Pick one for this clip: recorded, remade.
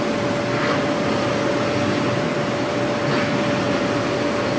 remade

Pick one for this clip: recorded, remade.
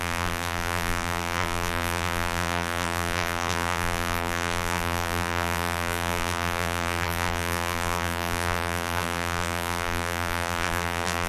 remade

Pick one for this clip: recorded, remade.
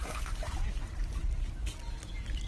recorded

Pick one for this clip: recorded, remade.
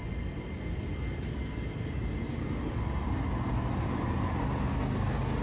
recorded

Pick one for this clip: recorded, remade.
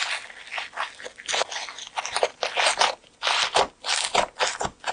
recorded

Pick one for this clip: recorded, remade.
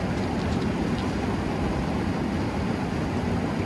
recorded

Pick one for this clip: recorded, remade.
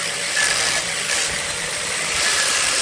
recorded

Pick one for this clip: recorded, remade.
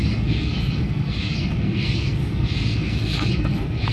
remade